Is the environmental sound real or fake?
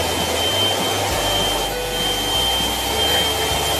real